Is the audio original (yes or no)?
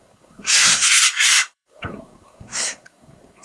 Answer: no